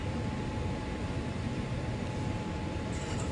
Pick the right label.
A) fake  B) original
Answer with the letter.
B